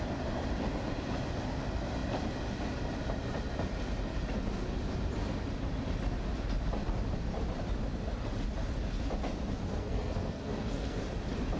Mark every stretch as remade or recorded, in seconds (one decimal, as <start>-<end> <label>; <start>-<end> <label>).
0.0-9.8 recorded; 9.8-11.0 remade; 11.0-11.6 recorded